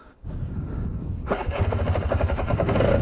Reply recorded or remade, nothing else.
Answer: remade